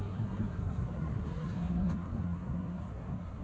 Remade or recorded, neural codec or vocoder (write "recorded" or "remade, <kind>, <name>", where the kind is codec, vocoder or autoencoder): remade, codec, SNAC